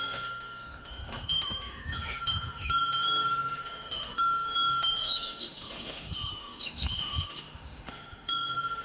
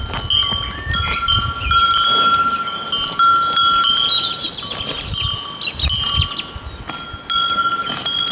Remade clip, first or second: first